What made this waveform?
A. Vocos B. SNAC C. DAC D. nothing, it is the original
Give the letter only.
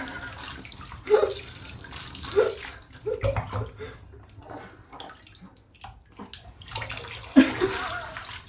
D